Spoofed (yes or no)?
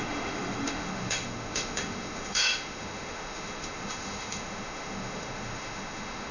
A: yes